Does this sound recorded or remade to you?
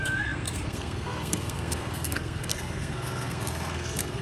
remade